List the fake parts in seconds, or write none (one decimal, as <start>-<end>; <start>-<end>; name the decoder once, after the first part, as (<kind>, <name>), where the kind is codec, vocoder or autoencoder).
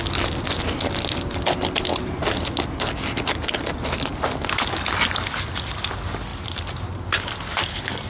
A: none